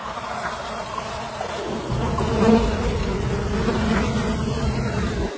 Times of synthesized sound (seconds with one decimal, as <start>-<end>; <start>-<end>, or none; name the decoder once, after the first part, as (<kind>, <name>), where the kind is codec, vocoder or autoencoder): 0.0-1.2 (vocoder, BigVGAN v2); 2.3-2.9